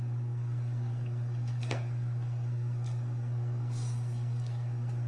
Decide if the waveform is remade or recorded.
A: remade